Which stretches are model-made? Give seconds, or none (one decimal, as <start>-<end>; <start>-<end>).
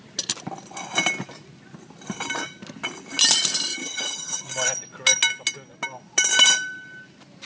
3.7-4.4